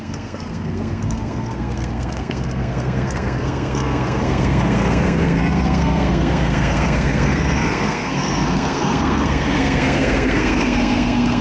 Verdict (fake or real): fake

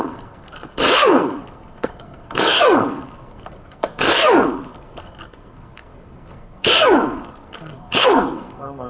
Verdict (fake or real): fake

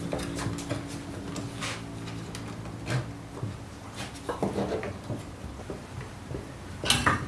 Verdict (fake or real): real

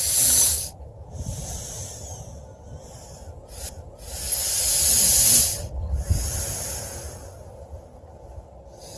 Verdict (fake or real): real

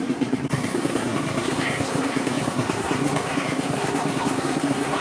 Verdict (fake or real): fake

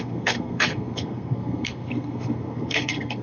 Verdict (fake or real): fake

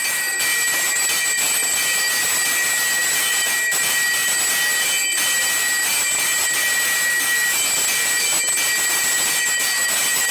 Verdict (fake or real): real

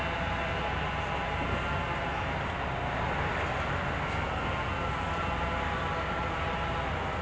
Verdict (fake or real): real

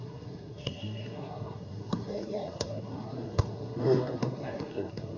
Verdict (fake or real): fake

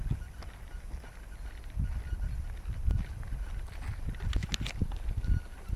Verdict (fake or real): real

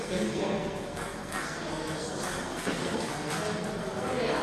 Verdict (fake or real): fake